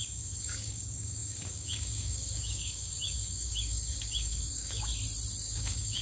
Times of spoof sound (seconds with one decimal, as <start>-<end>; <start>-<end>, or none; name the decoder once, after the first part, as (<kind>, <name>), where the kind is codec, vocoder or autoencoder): 0.0-4.9 (codec, DAC); 5.4-6.0